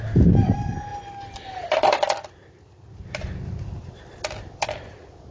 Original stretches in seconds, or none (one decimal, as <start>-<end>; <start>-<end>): 0.0-5.3